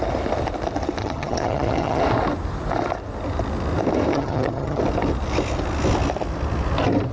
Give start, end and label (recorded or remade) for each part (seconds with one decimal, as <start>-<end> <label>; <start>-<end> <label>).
0.0-1.0 recorded; 1.0-2.0 remade; 2.0-4.1 recorded; 4.1-4.8 remade; 4.8-7.1 recorded